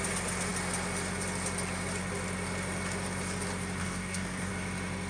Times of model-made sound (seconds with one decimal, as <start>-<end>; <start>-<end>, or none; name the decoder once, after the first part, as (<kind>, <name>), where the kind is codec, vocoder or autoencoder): 3.8-4.5 (codec, DAC)

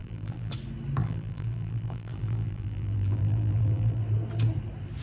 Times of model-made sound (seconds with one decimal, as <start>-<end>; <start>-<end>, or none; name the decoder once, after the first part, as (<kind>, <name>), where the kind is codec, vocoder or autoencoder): 0.0-0.5 (vocoder, BigVGAN v2); 1.0-4.0

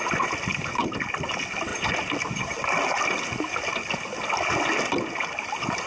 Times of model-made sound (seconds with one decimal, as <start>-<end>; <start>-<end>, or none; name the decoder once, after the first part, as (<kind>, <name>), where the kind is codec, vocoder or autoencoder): none

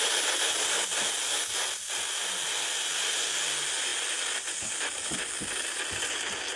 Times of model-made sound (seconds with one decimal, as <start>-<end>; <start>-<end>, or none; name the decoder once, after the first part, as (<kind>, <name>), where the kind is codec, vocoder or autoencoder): none

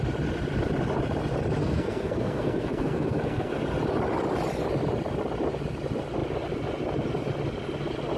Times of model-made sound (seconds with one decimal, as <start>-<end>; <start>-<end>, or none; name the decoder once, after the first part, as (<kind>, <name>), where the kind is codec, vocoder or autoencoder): 1.6-3.5 (codec, SNAC)